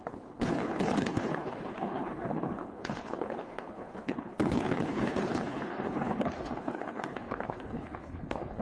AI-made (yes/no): yes